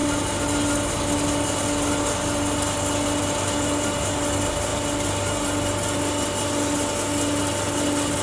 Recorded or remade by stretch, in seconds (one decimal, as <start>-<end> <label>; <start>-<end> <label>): 0.0-8.2 recorded